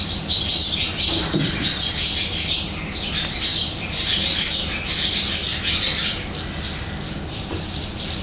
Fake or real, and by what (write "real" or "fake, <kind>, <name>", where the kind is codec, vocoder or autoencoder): real